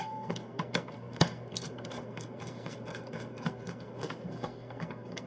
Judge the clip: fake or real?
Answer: fake